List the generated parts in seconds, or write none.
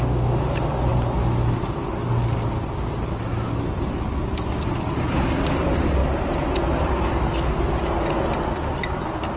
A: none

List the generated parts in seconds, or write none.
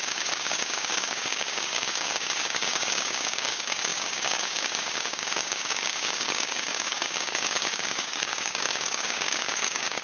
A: 0.0-10.0 (codec, DAC)